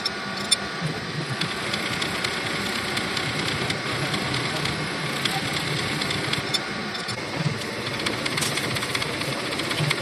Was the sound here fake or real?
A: real